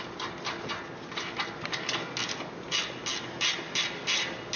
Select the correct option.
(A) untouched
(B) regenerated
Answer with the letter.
A